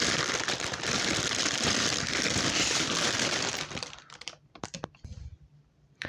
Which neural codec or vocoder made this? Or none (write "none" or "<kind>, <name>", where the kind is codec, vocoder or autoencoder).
vocoder, BigVGAN v2